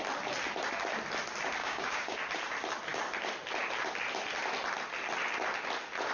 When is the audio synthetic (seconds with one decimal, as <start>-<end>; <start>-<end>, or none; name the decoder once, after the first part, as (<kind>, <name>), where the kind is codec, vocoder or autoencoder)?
1.6-2.2 (codec, DAC)